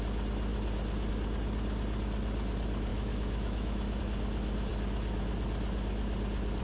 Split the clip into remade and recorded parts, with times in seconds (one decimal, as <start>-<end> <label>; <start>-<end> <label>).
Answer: 0.0-2.9 recorded; 2.9-4.0 remade; 4.0-6.6 recorded

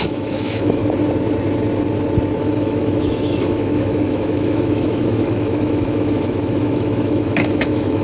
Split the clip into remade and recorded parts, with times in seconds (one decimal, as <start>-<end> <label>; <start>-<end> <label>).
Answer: 0.0-0.8 remade; 0.8-2.4 recorded; 2.4-8.0 remade

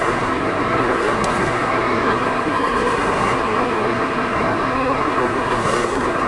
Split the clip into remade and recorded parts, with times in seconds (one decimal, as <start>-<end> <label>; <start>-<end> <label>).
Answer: 0.0-6.3 remade

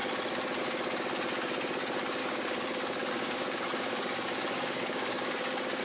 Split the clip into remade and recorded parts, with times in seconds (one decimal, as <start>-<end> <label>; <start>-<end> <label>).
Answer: 0.0-2.2 recorded; 2.2-5.8 remade

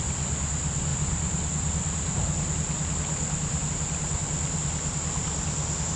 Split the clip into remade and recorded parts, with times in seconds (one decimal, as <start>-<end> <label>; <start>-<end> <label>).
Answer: 0.0-6.0 recorded

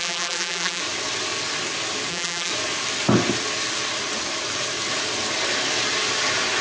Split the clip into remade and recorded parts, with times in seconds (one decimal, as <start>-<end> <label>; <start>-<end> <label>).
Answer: 0.0-0.8 remade; 0.8-2.1 recorded; 2.1-2.5 remade; 2.5-6.6 recorded

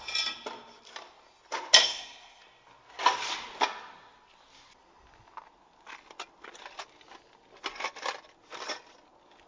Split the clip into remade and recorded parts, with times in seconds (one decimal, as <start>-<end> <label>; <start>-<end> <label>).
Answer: 0.0-1.8 recorded; 1.8-2.4 remade; 2.4-9.5 recorded